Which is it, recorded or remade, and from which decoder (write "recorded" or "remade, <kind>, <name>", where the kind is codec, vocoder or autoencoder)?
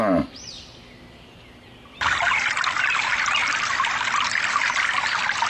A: recorded